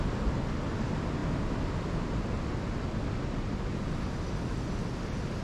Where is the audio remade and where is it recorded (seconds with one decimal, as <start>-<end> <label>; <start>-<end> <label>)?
0.0-5.4 recorded